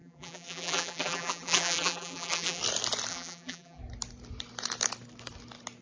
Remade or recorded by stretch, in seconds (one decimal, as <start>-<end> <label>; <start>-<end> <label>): 0.0-2.6 remade; 2.6-3.1 recorded; 3.1-3.8 remade; 3.8-5.8 recorded